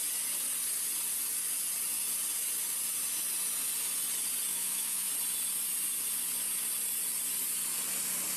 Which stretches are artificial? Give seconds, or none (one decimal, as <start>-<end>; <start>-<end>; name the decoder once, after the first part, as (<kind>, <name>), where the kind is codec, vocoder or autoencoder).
4.5-5.1 (autoencoder, DAC-VAE)